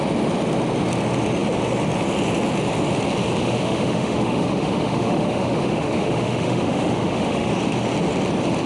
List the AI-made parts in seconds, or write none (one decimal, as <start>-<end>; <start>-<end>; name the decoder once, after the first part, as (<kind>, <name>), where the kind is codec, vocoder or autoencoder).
3.4-7.5 (autoencoder, DAC-VAE)